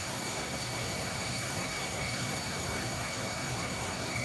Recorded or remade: remade